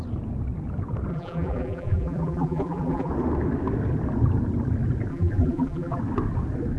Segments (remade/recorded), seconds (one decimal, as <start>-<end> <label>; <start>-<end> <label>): 0.0-1.1 recorded; 1.1-3.1 remade; 3.1-5.1 recorded; 5.1-6.0 remade; 6.0-6.8 recorded

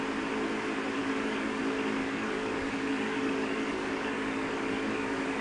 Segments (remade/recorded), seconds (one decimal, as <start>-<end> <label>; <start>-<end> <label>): 0.0-1.0 recorded; 1.0-1.6 remade; 1.6-2.0 recorded; 2.0-5.4 remade

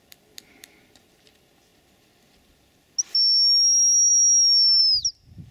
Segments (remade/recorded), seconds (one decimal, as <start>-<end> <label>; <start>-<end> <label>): 0.0-5.5 recorded

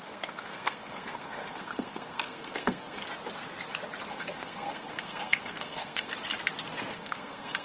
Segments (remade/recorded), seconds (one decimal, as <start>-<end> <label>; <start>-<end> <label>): 0.0-3.0 remade; 3.0-4.1 recorded; 4.1-6.1 remade; 6.1-6.9 recorded; 6.9-7.6 remade